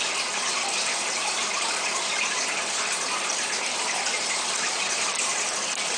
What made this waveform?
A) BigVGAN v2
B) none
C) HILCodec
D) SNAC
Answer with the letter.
A